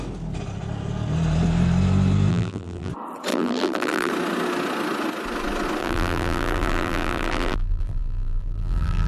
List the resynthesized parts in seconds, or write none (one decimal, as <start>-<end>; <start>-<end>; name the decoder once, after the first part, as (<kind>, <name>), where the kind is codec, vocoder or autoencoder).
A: 2.3-2.9 (vocoder, BigVGAN v2); 3.3-4.1; 5.8-9.1